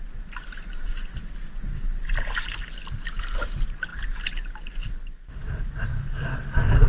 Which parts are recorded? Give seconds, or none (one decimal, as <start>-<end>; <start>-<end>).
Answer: 0.0-5.9